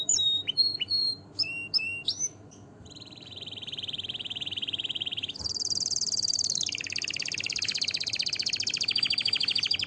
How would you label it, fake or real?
fake